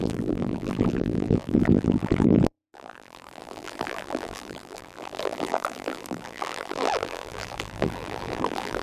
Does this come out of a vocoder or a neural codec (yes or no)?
yes